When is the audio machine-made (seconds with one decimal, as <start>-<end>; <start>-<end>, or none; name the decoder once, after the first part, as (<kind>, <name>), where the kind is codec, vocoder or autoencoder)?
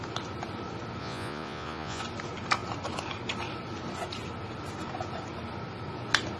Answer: 1.0-2.0 (vocoder, Vocos)